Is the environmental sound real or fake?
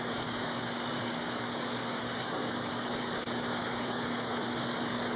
fake